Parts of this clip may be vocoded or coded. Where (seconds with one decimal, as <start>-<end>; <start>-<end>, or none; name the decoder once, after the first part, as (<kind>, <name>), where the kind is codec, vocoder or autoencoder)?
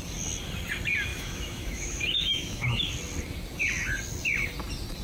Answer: 1.1-2.9 (autoencoder, DAC-VAE)